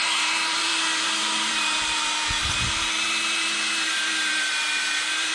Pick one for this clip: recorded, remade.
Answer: remade